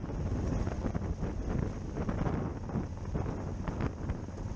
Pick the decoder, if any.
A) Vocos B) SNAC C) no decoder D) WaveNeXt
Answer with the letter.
C